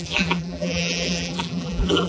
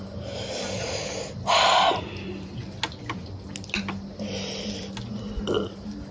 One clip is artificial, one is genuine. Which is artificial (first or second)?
first